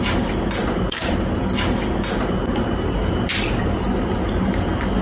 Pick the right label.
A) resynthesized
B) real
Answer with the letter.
A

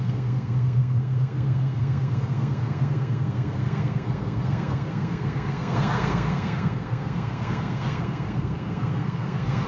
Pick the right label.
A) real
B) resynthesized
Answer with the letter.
B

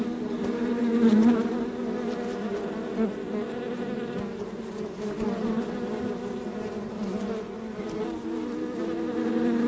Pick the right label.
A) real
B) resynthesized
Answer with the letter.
A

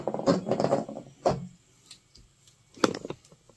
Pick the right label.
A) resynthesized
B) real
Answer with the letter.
B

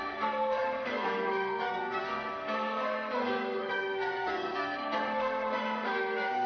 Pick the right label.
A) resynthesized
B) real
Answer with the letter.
A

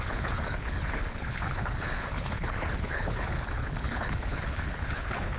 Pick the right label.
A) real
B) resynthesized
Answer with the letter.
B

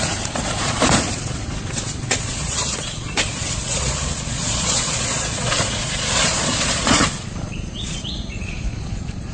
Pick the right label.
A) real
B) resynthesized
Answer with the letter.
B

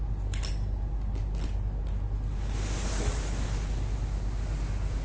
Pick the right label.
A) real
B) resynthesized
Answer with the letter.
A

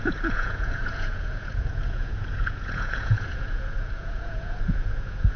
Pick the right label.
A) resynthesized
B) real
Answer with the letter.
A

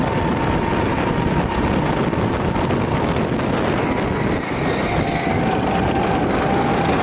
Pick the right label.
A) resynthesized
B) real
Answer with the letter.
B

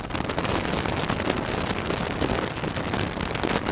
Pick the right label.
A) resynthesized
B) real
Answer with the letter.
B